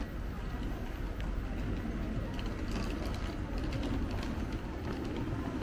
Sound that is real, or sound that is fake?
real